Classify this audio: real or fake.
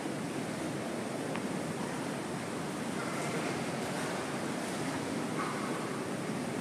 real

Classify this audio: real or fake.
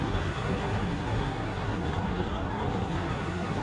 fake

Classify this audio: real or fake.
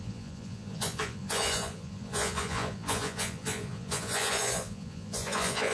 fake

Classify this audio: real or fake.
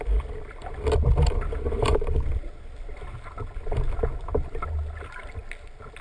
real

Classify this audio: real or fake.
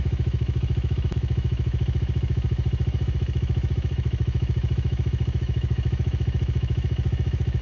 fake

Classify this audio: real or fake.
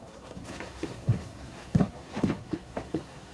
fake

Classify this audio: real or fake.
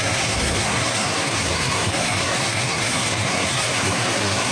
fake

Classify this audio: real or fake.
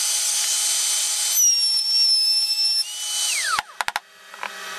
real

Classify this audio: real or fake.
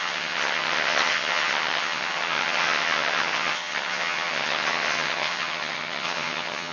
fake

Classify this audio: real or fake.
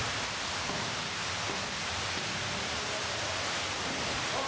real